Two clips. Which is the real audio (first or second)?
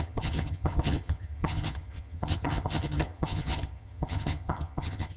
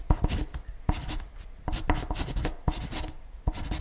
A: second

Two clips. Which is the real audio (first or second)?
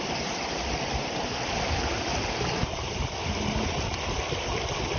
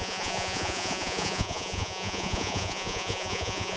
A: first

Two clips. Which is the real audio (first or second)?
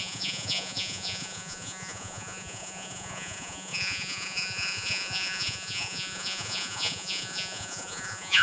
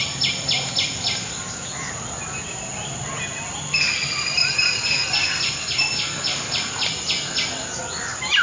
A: second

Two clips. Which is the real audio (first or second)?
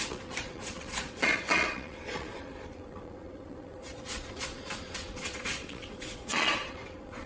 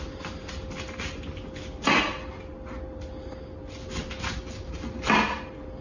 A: second